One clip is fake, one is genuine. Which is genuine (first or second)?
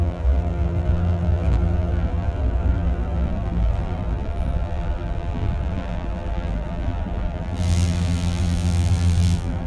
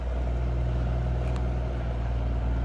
second